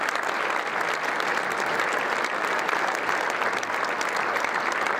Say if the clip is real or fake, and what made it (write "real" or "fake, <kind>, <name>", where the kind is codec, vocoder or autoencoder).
real